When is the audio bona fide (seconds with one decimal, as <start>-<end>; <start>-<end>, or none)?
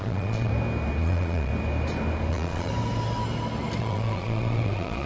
0.5-1.0; 1.5-2.3; 2.7-3.8